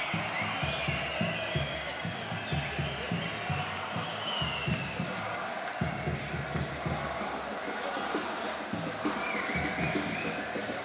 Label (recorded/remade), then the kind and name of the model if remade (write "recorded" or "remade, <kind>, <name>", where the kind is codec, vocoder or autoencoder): recorded